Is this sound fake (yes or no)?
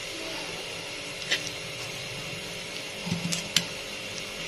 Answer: no